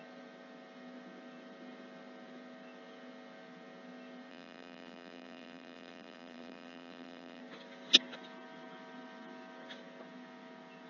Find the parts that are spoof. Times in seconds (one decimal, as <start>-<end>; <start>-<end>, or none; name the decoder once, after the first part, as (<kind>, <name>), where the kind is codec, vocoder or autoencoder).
4.3-7.4 (vocoder, BigVGAN v2)